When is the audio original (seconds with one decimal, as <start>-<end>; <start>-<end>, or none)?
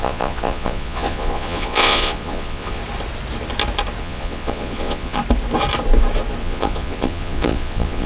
2.8-4.0; 5.2-6.4